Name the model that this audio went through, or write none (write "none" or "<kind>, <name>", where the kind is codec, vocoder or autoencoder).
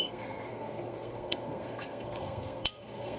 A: codec, SNAC